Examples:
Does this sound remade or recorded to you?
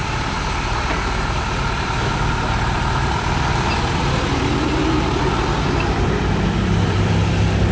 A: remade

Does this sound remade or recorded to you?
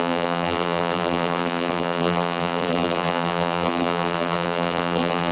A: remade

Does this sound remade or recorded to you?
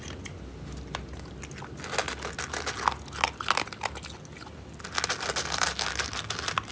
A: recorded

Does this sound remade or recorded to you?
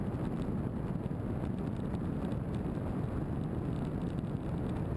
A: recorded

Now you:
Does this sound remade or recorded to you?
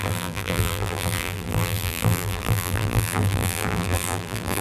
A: remade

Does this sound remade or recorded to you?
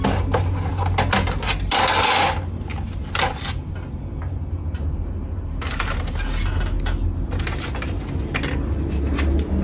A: recorded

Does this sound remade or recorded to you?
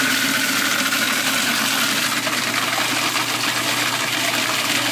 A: recorded